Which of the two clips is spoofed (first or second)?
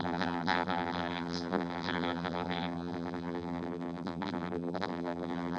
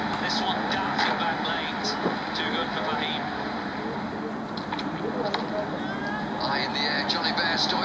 first